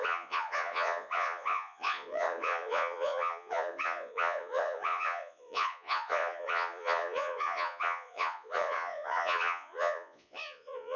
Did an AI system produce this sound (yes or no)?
yes